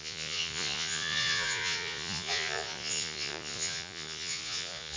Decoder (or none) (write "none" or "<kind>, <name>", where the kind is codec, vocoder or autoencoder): vocoder, Vocos